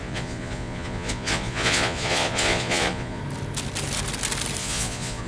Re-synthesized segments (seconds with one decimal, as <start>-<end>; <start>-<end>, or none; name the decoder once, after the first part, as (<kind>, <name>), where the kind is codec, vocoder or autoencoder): 0.0-3.2 (vocoder, Vocos); 4.6-5.3